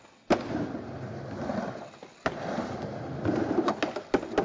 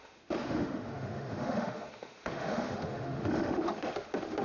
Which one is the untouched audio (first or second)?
first